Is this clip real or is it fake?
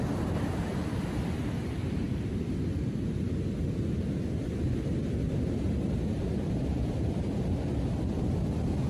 real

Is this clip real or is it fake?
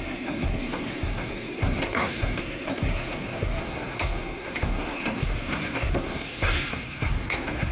fake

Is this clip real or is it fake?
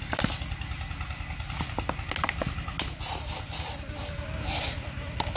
real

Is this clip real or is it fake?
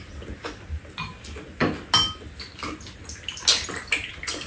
real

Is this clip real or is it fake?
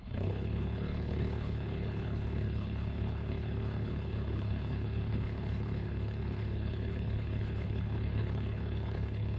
fake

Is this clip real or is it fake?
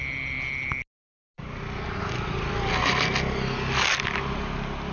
real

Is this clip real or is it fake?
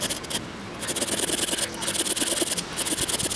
real